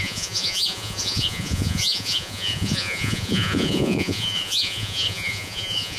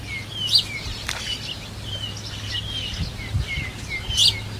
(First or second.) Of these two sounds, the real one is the second